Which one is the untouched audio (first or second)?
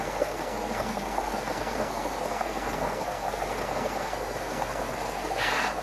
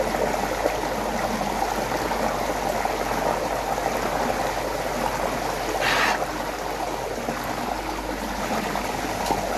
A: second